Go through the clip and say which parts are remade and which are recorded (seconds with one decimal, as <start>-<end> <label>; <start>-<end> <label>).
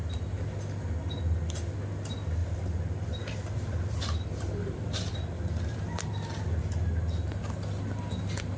0.0-2.4 recorded; 2.4-6.6 remade; 6.6-8.6 recorded